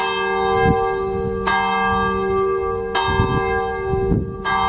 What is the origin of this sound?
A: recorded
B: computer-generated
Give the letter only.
A